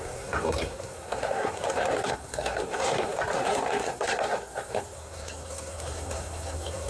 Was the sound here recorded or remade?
remade